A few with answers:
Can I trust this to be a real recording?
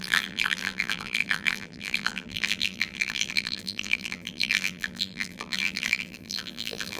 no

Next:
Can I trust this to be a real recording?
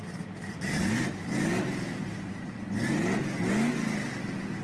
yes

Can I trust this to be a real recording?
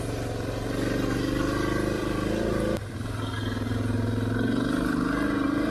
yes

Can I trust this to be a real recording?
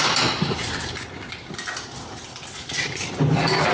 yes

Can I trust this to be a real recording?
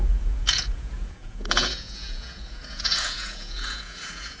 no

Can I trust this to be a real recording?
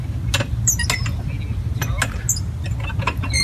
yes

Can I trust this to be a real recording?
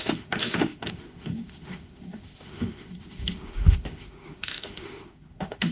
no